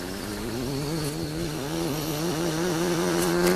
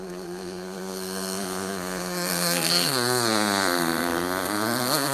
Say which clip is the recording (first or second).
first